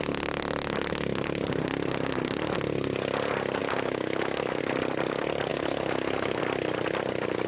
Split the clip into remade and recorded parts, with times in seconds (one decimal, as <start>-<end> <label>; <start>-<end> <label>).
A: 0.0-3.6 recorded; 3.6-4.6 remade; 4.6-5.5 recorded; 5.5-6.4 remade; 6.4-7.5 recorded